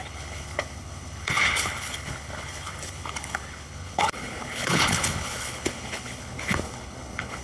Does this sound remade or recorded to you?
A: remade